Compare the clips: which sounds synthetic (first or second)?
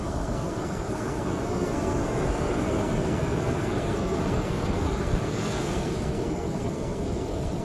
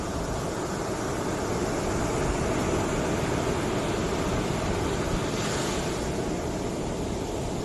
first